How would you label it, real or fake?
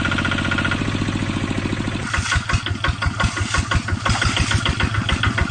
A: real